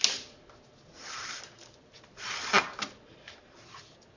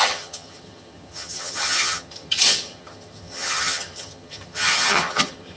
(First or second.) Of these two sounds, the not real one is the second